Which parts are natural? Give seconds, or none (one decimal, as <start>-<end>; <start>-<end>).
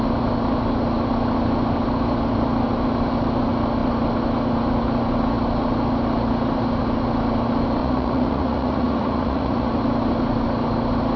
0.0-7.8; 9.7-11.2